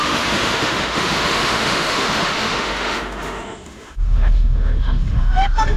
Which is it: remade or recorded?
remade